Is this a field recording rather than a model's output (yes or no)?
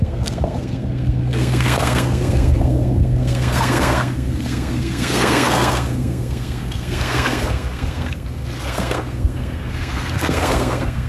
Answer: no